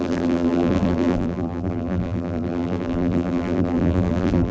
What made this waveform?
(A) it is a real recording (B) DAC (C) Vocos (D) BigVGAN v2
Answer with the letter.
D